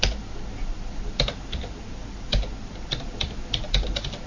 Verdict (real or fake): real